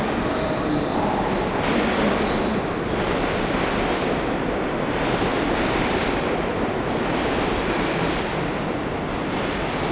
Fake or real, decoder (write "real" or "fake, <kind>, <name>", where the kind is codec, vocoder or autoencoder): fake, vocoder, BigVGAN v2